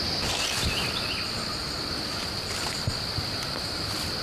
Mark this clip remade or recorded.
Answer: recorded